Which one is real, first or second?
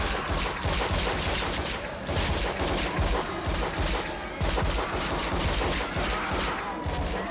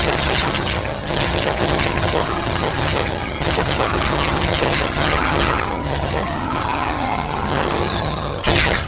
first